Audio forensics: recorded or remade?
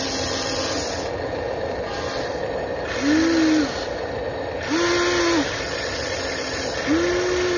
recorded